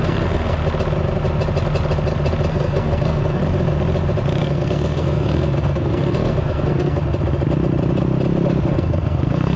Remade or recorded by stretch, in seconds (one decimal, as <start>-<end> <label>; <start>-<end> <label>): 0.0-0.6 remade; 0.6-2.5 recorded; 2.5-3.4 remade; 3.4-4.4 recorded; 4.4-7.0 remade; 7.0-8.7 recorded; 8.7-9.6 remade